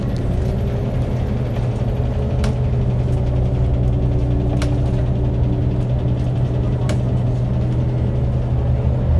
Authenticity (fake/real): real